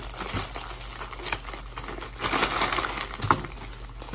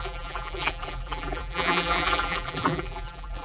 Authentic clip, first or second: first